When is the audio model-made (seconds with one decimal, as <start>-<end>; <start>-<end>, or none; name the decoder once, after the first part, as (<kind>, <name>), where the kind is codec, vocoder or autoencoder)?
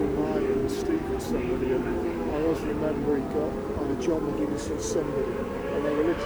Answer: 0.0-0.6 (codec, DAC); 1.2-2.7; 4.0-4.8; 5.4-6.3